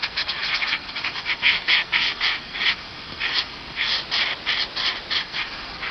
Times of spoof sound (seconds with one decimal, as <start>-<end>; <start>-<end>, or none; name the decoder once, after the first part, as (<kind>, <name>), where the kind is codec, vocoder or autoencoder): 0.0-3.9 (codec, SNAC); 5.2-5.9